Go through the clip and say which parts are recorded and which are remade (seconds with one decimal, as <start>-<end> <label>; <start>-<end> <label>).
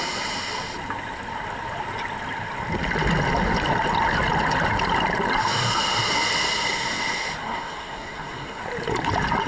0.0-7.4 recorded; 7.4-8.6 remade; 8.6-9.5 recorded